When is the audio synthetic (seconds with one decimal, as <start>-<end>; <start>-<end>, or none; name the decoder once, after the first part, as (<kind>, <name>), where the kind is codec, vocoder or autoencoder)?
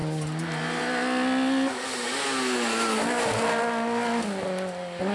none